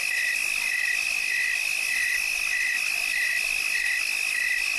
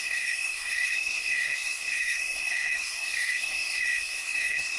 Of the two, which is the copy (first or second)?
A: second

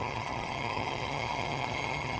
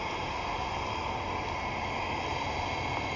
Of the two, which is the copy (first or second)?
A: first